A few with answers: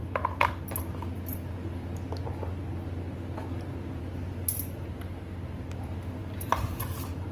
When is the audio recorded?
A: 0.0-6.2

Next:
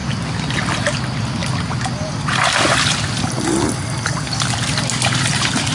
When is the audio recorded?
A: 0.0-5.7

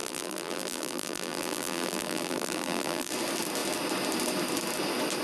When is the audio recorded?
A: 3.1-5.2

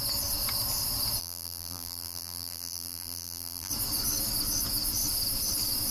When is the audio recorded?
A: 0.0-1.2; 3.7-5.9